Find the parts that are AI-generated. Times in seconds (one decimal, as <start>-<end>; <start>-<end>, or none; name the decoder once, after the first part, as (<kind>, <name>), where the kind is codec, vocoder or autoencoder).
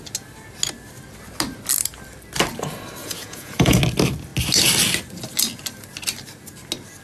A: 3.0-3.8 (vocoder, Vocos)